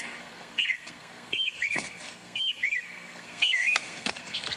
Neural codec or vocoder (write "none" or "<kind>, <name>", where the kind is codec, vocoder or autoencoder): codec, SNAC